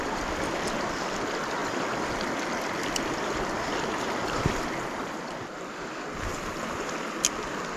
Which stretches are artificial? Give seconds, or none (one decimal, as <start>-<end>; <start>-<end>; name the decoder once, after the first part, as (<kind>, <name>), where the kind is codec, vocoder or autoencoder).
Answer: none

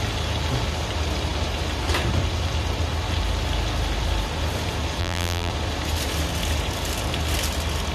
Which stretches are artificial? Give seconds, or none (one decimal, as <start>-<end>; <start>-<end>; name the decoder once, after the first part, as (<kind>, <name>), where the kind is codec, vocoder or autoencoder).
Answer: 5.0-5.5 (vocoder, BigVGAN v2)

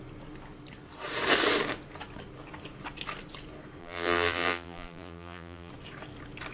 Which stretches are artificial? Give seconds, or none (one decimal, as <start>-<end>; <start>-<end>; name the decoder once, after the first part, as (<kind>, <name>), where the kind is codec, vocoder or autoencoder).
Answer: 3.8-5.7 (vocoder, BigVGAN v2)

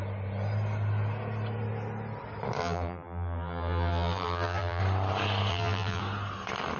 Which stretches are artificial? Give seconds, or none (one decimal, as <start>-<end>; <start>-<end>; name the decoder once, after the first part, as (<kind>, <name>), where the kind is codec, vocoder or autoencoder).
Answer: 2.6-4.8 (vocoder, BigVGAN v2); 5.5-6.0